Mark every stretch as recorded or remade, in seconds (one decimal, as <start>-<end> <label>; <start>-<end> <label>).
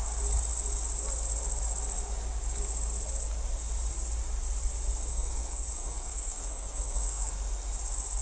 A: 0.0-5.1 recorded; 5.1-7.3 remade; 7.3-8.2 recorded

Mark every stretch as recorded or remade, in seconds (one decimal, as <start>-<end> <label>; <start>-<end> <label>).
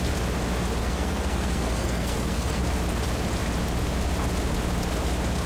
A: 0.0-0.8 recorded; 0.8-2.6 remade; 2.6-5.5 recorded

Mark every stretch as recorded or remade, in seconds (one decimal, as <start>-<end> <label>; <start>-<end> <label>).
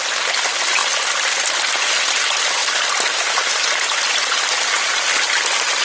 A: 0.0-5.8 recorded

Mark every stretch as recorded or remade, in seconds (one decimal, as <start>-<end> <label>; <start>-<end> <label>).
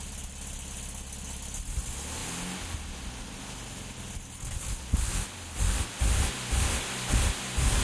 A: 0.0-7.8 recorded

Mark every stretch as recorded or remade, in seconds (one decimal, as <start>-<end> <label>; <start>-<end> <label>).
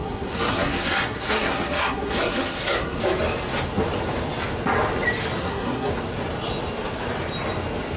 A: 0.0-3.0 remade; 3.0-5.4 recorded; 5.4-5.9 remade; 5.9-8.0 recorded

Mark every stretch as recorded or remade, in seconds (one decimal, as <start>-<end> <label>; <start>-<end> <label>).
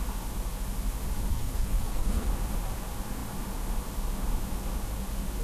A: 0.0-1.3 recorded; 1.3-2.3 remade; 2.3-5.4 recorded